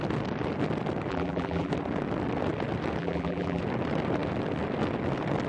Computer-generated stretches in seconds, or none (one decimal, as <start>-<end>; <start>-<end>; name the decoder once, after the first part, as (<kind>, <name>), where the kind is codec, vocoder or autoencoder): 1.1-1.7 (vocoder, BigVGAN v2); 3.0-3.6